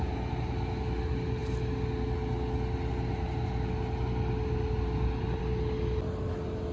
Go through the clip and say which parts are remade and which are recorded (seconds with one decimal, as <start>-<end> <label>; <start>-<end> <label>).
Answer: 0.0-6.7 recorded